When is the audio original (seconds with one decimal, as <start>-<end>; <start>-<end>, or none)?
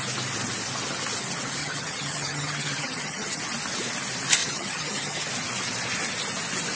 0.0-1.6; 3.4-4.4; 5.3-6.8